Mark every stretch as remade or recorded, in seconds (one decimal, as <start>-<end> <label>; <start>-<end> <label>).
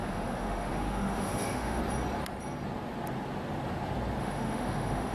0.0-1.8 remade; 1.8-4.2 recorded; 4.2-5.1 remade